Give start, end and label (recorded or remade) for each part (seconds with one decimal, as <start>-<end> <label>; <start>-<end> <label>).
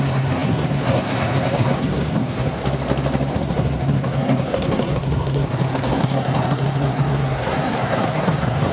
0.0-2.6 remade; 2.6-3.3 recorded; 3.3-8.7 remade